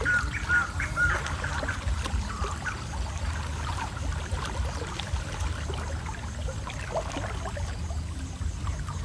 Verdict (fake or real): real